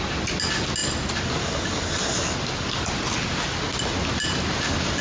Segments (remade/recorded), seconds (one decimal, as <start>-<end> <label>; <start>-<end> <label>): 0.0-5.0 recorded